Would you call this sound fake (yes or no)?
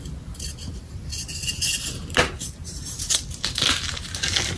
no